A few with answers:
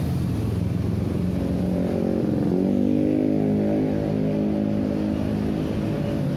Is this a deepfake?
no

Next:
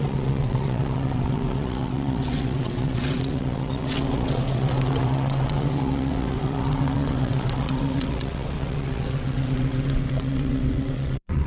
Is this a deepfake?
yes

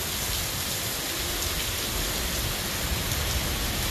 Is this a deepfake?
no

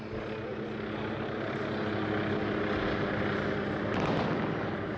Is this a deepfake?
no